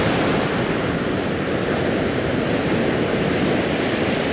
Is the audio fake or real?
real